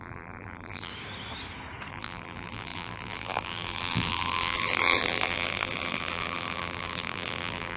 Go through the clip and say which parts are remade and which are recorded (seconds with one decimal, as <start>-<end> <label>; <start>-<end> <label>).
0.0-0.9 remade; 0.9-1.9 recorded; 1.9-7.8 remade